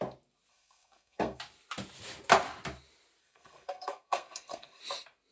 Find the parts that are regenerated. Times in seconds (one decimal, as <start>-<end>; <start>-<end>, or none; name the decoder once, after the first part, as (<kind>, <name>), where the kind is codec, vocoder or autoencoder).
0.5-1.4 (codec, SNAC); 3.2-4.8